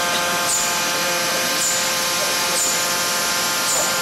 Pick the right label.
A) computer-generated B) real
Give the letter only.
B